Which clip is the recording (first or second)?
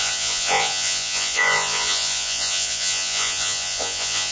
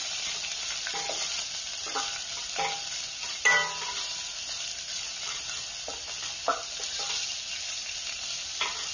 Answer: second